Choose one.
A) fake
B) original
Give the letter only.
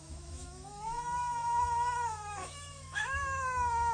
A